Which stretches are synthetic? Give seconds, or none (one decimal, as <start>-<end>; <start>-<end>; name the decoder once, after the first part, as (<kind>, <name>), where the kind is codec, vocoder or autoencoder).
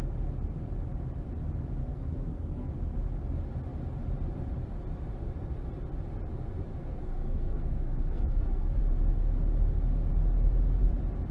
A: 1.8-2.7 (codec, SNAC); 6.7-8.8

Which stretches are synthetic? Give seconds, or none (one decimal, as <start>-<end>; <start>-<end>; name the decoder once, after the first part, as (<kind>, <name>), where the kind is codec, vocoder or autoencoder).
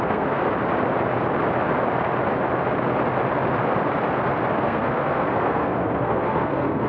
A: 0.0-0.4 (codec, SNAC); 4.5-6.9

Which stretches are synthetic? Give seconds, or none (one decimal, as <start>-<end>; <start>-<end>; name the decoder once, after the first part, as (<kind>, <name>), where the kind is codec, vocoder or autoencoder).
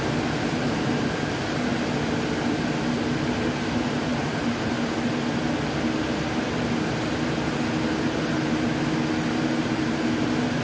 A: none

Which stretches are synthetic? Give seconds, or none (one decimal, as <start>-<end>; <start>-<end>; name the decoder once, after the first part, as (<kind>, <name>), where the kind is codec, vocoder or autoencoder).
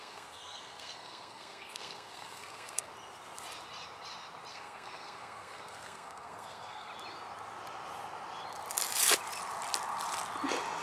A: 0.0-2.9 (codec, SNAC); 4.5-6.9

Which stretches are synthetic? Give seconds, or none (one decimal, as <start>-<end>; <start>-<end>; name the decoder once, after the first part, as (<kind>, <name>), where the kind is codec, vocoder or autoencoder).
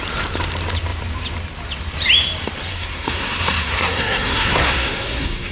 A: 2.7-5.5 (codec, SNAC)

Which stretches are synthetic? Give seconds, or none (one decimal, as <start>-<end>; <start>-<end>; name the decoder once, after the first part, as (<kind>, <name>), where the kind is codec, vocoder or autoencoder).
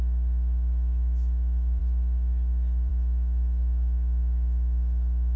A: none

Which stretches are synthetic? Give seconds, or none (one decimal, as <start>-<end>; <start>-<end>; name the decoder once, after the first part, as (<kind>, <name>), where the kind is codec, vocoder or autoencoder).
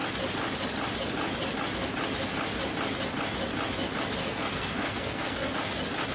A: 4.2-5.5 (codec, SNAC)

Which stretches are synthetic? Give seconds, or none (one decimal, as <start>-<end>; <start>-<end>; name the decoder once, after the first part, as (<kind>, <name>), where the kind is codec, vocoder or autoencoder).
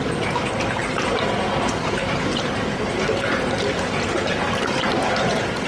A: none